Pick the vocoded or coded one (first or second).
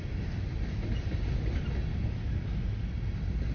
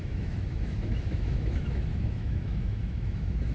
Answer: second